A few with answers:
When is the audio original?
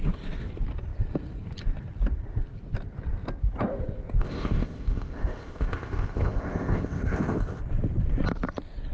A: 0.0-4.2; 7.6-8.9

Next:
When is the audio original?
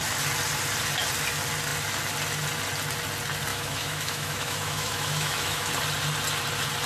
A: 0.0-3.5; 5.7-6.9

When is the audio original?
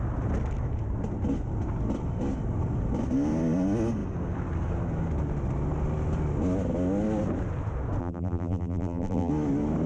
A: 0.0-8.0; 9.3-9.9